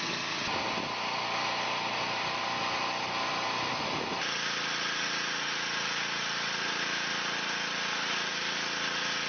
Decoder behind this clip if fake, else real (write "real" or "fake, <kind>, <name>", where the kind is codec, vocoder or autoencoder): real